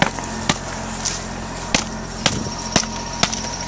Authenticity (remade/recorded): recorded